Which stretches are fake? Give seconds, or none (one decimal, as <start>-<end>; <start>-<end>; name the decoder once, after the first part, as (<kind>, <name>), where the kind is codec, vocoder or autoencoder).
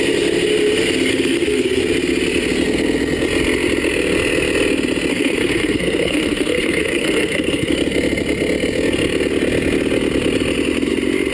1.1-1.8 (codec, SNAC); 5.1-7.7